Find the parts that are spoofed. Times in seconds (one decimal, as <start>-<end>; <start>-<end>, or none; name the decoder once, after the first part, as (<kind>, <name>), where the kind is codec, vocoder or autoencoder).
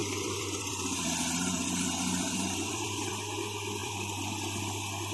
0.0-3.1 (vocoder, BigVGAN v2); 3.8-4.3